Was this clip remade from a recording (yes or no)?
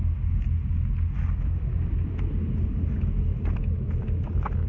no